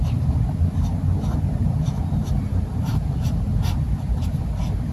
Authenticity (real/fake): fake